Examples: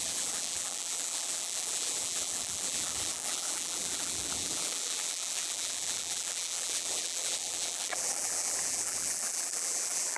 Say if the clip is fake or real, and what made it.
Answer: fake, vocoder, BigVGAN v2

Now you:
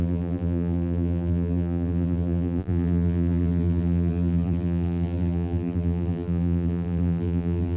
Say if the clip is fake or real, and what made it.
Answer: fake, vocoder, BigVGAN v2